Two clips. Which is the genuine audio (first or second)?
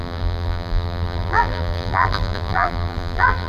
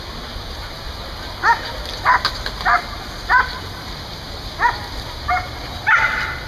second